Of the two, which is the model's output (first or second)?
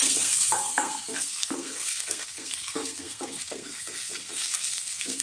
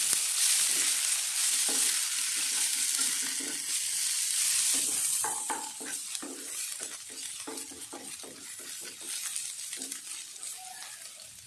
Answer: first